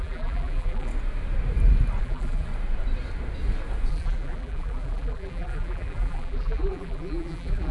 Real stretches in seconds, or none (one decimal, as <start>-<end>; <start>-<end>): 0.9-2.0; 2.5-3.9